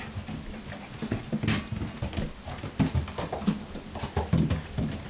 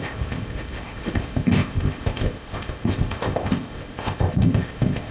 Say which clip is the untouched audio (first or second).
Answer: first